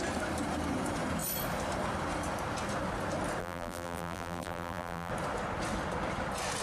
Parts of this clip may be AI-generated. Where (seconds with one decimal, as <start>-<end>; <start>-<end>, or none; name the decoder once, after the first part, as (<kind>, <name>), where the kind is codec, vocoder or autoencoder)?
3.4-5.1 (vocoder, BigVGAN v2)